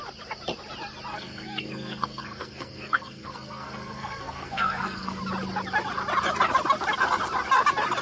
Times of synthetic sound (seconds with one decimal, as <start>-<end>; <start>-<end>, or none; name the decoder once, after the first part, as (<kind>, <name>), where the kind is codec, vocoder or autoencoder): 1.1-5.2 (codec, SNAC)